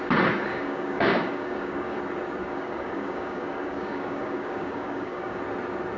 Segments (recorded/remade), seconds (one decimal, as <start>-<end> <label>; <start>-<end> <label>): 0.0-0.5 recorded; 0.5-2.0 remade; 2.0-2.4 recorded; 2.4-5.4 remade; 5.4-6.0 recorded